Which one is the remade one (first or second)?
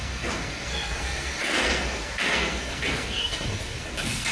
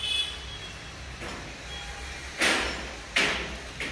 first